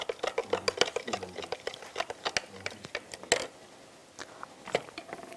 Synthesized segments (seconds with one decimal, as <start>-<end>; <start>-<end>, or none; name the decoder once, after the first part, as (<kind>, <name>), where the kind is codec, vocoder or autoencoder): none